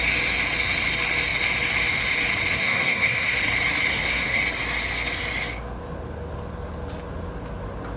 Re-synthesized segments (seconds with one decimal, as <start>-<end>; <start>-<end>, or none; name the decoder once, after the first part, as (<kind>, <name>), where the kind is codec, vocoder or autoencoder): 2.5-3.4 (codec, SNAC); 3.9-4.4